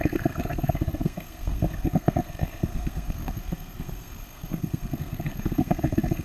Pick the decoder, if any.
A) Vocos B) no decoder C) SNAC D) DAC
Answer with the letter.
C